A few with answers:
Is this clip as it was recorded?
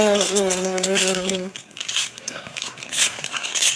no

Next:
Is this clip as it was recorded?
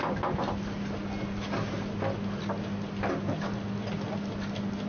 yes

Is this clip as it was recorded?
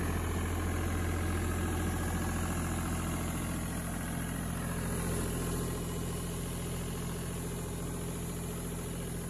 yes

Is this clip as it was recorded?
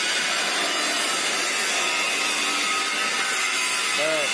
yes